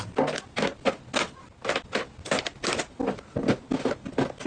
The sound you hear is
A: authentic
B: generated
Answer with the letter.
A